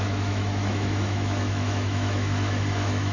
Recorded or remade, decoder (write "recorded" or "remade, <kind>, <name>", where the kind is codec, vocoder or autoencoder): remade, autoencoder, DAC-VAE